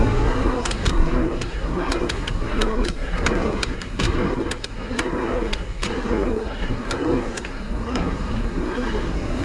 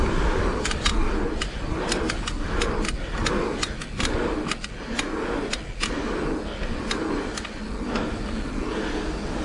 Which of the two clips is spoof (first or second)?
first